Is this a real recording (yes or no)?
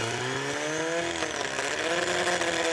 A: yes